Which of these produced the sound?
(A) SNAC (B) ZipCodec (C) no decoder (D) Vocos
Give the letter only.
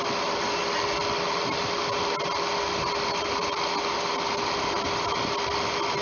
C